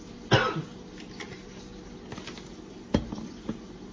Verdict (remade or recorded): recorded